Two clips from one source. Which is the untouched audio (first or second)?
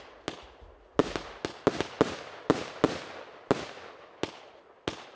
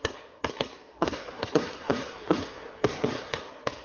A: first